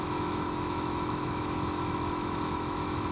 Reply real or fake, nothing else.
fake